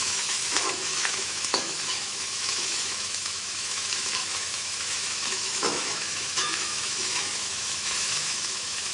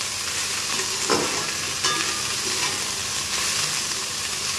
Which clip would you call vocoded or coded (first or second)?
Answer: first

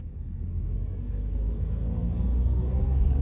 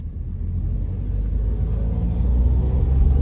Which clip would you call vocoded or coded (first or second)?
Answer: first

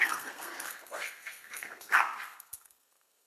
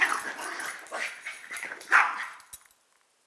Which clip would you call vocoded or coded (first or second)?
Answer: first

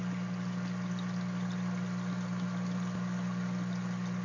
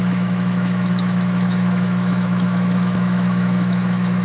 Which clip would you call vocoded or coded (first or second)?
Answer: second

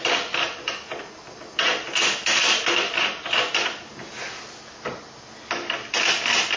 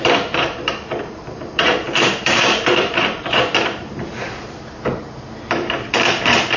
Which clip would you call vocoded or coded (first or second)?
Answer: second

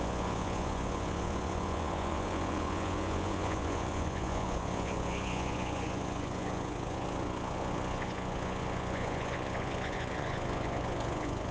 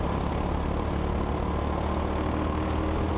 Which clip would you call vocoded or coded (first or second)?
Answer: first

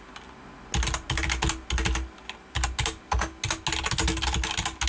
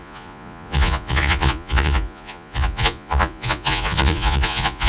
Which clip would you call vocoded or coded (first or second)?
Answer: second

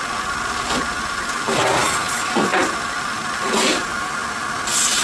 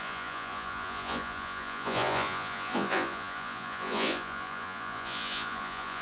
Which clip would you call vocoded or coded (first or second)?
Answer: second